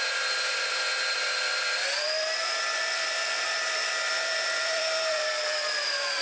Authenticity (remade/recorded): remade